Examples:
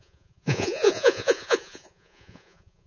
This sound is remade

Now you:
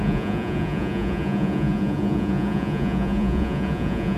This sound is remade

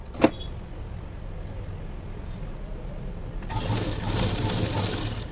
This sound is recorded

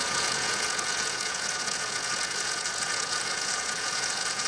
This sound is remade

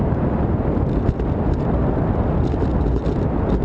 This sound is recorded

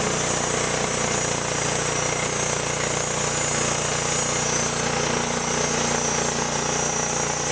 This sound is recorded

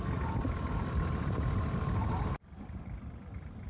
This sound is recorded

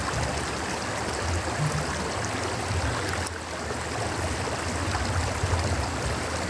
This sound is recorded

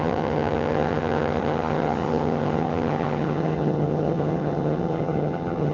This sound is remade